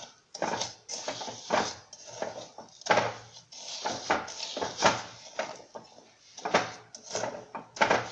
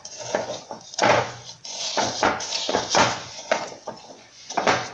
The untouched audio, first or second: first